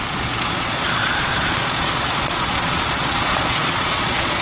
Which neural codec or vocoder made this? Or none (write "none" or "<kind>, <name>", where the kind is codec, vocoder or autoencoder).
vocoder, Vocos